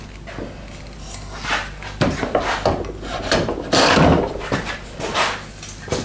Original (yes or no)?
yes